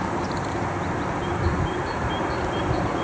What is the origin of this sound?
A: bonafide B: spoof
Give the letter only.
A